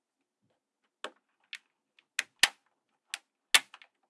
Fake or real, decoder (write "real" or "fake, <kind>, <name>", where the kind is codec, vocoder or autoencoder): real